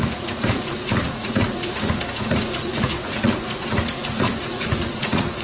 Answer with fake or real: fake